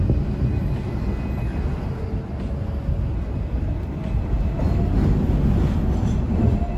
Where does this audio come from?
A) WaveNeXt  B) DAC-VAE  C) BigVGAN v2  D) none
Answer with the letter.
D